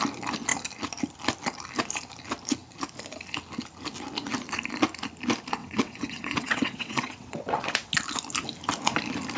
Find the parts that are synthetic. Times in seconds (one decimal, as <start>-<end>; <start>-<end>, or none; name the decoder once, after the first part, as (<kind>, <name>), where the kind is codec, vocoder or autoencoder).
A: 5.6-7.9 (vocoder, WaveNeXt)